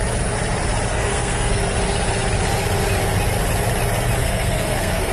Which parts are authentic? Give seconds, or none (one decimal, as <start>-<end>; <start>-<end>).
0.0-0.9; 1.6-4.2